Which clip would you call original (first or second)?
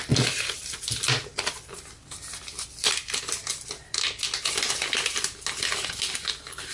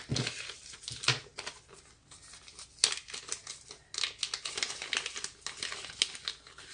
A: second